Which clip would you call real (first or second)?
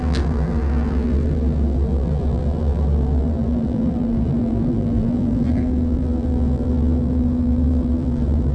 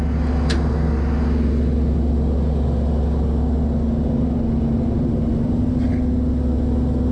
second